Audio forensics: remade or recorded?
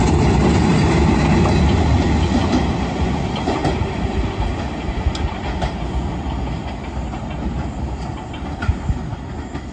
recorded